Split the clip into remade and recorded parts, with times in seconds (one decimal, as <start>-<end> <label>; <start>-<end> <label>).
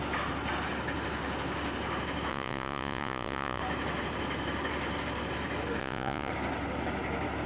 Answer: 0.0-2.3 recorded; 2.3-3.6 remade; 3.6-5.8 recorded; 5.8-6.3 remade; 6.3-7.5 recorded